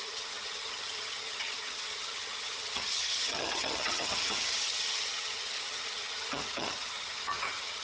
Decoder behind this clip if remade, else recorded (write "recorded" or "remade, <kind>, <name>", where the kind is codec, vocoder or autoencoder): remade, vocoder, HiFi-GAN